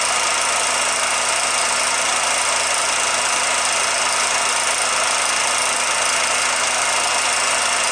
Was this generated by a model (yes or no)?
no